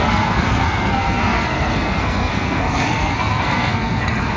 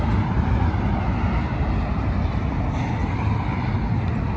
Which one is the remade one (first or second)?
first